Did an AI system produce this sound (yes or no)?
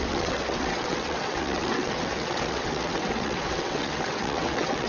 yes